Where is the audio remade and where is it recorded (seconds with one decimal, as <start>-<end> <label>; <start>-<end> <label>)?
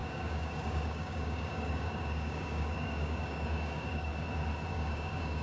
0.0-4.1 remade; 4.1-4.7 recorded; 4.7-5.4 remade